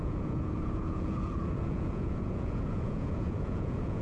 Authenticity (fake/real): fake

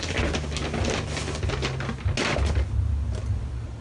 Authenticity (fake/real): real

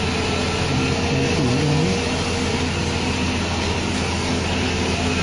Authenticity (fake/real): real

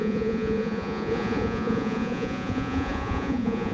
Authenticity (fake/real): fake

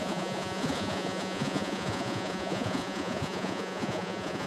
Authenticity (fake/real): fake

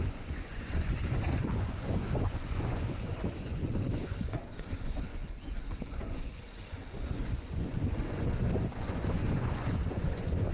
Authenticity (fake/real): fake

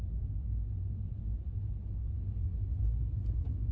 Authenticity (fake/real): real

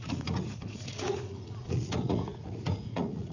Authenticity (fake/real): fake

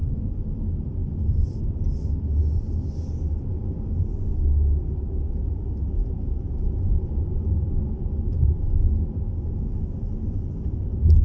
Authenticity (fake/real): real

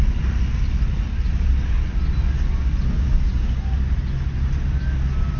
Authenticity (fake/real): real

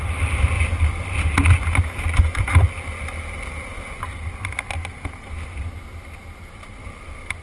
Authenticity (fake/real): real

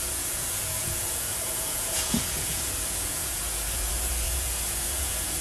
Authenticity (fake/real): fake